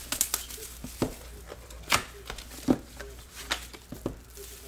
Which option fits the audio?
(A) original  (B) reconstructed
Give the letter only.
A